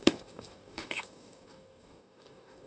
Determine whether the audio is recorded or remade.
remade